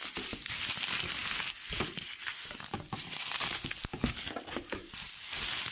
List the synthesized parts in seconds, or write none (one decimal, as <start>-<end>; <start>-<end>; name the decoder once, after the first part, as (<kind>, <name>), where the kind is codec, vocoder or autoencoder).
none